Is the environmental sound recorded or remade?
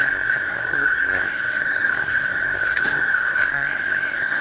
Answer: remade